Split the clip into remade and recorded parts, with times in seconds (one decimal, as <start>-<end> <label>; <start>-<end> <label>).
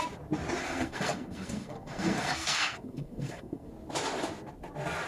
0.0-0.6 recorded; 0.6-3.7 remade; 3.7-5.1 recorded